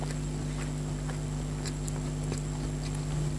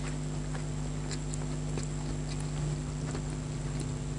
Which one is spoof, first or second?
first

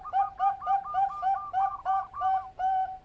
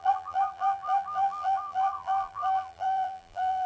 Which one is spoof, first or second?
second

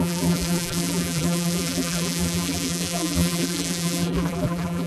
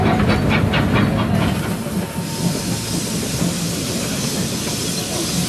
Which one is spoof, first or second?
first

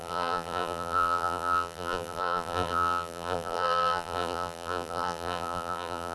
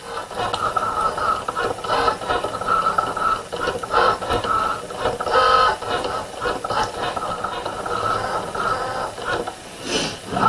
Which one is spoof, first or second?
first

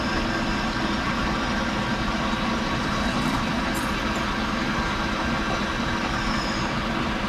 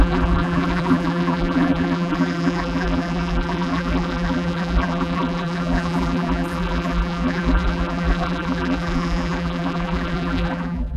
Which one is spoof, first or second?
second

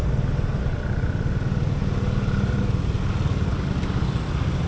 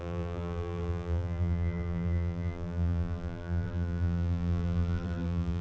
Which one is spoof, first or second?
second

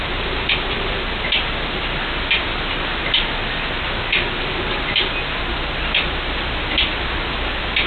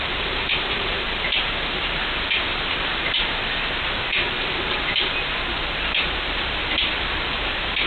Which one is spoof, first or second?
second